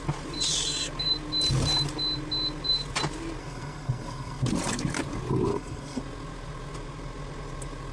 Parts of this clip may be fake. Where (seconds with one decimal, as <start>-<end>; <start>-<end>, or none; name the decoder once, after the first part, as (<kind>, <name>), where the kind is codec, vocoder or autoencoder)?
3.4-4.4 (codec, SNAC); 5.5-6.0

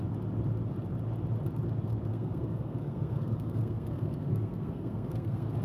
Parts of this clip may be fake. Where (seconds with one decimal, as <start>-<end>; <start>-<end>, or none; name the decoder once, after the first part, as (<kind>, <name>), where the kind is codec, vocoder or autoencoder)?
2.1-5.6 (codec, SNAC)

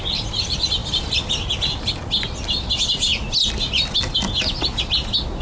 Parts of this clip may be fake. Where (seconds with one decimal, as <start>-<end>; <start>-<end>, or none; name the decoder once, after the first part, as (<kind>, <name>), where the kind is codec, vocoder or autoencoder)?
none

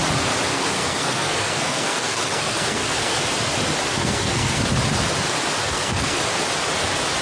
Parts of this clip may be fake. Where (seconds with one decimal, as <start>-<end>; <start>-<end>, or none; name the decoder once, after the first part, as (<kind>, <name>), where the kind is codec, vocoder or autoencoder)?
0.5-3.2 (codec, SNAC); 4.0-4.6; 5.6-6.2

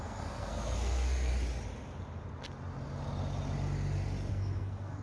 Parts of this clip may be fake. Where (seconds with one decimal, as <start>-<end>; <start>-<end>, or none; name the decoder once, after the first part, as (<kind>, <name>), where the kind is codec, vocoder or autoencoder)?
0.0-1.3 (codec, SNAC); 4.3-5.0